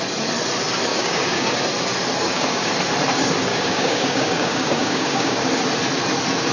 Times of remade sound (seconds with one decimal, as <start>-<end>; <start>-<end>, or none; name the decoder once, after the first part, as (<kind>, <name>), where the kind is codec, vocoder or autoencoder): 0.9-1.5 (codec, DAC); 2.2-2.7; 3.5-5.5